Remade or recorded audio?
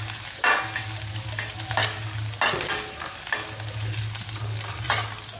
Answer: recorded